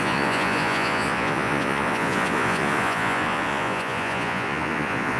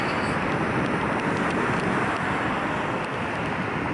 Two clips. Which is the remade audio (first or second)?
first